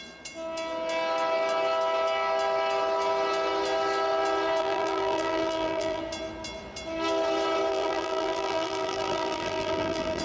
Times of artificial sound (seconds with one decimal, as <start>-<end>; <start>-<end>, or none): 4.6-6.0; 7.7-10.2